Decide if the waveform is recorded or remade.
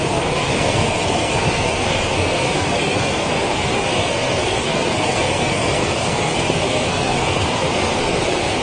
remade